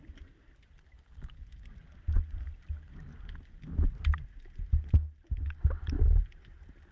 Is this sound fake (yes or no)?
no